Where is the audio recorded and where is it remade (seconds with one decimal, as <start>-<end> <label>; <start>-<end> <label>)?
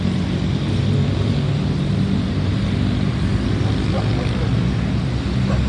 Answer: 0.0-5.7 recorded